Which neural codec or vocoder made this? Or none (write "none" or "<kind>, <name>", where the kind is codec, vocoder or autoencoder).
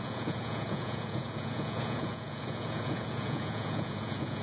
vocoder, Vocos